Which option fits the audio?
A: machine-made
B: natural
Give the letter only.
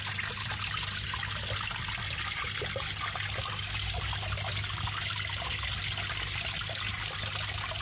B